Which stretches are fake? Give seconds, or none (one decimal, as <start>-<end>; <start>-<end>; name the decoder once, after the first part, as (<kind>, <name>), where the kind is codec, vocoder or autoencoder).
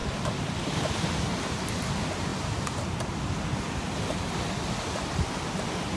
0.0-0.6 (vocoder, BigVGAN v2)